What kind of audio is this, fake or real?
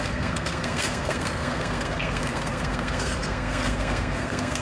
fake